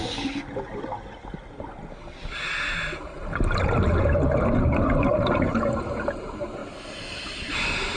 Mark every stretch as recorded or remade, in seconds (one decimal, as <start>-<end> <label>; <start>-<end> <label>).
0.0-4.0 recorded; 4.0-6.6 remade; 6.6-7.5 recorded; 7.5-8.0 remade